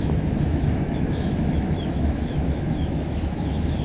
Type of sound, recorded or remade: remade